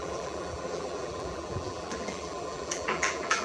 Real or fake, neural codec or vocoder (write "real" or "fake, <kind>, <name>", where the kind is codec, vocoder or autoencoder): fake, vocoder, BigVGAN v2